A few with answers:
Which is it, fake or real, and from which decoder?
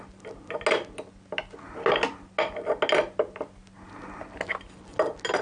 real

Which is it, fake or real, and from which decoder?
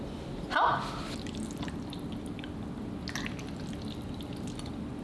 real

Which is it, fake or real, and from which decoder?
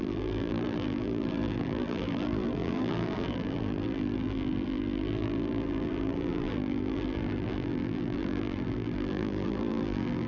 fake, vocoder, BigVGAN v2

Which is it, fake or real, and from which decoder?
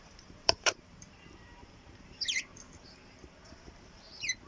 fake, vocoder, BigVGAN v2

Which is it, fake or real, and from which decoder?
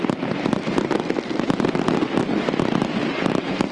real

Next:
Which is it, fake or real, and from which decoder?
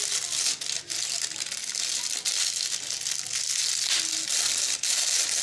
real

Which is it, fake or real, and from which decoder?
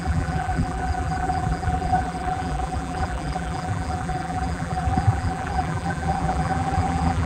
fake, vocoder, BigVGAN v2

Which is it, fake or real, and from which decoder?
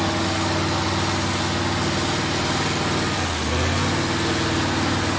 real